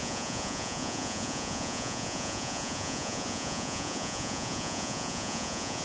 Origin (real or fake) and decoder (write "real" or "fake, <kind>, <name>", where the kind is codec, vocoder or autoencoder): fake, vocoder, Vocos